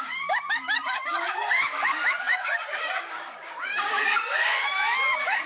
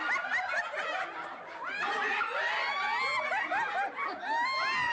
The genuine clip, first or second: second